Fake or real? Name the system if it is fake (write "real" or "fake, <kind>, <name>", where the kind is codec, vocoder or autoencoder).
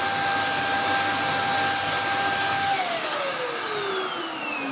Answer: real